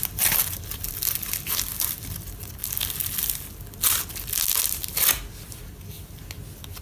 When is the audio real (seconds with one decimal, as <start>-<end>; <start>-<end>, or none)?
2.6-6.8